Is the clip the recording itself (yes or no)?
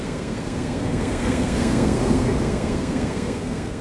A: no